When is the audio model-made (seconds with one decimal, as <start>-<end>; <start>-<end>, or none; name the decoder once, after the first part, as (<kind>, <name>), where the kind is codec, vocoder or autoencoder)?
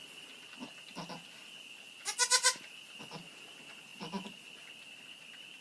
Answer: none